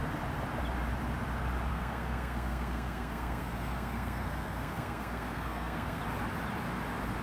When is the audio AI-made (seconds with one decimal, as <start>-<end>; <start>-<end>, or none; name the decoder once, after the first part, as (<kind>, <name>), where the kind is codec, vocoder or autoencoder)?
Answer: 1.7-6.0 (codec, SNAC)